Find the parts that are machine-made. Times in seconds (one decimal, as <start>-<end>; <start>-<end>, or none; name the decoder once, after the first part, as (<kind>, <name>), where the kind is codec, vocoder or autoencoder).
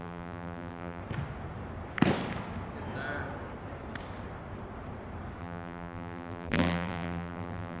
0.0-1.0 (vocoder, BigVGAN v2); 5.4-7.8